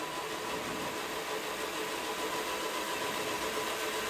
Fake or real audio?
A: real